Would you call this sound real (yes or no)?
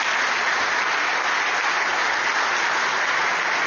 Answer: yes